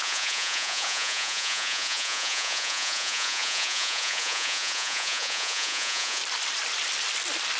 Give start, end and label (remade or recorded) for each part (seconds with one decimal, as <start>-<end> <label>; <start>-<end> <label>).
0.0-6.2 remade; 6.2-7.6 recorded